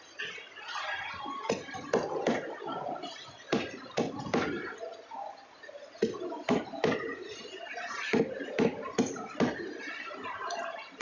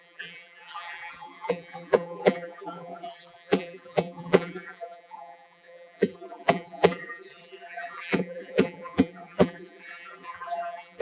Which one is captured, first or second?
first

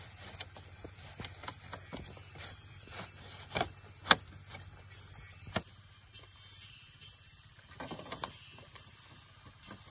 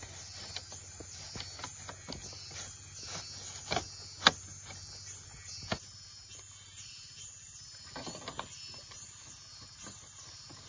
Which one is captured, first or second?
second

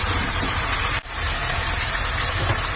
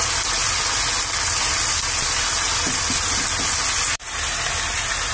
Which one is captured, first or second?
second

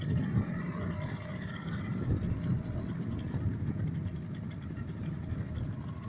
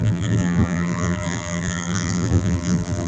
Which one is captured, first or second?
first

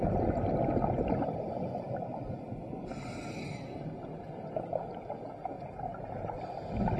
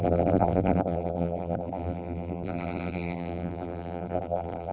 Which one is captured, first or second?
first